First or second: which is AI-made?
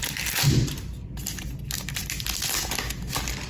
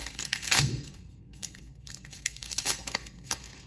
second